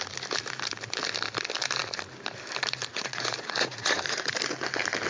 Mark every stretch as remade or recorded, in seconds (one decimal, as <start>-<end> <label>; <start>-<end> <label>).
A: 0.0-2.9 recorded; 2.9-4.3 remade; 4.3-5.1 recorded